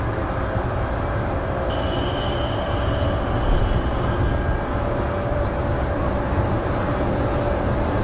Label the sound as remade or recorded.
recorded